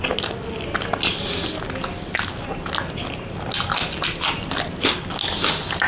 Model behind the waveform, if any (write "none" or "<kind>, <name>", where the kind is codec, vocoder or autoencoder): none